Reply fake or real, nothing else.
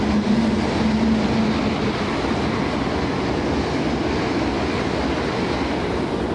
real